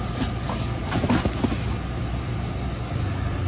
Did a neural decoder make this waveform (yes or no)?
no